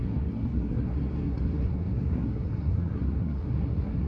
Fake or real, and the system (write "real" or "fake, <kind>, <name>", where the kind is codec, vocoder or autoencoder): fake, codec, SNAC